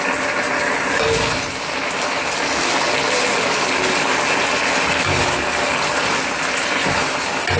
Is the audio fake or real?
real